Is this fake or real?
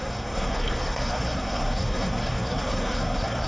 fake